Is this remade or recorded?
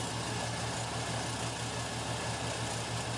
recorded